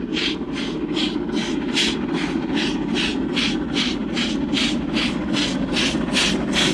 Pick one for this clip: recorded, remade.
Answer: recorded